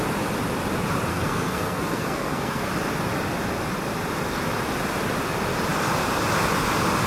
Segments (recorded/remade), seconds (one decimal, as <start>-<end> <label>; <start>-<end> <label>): 0.0-1.1 recorded; 1.1-2.7 remade; 2.7-7.1 recorded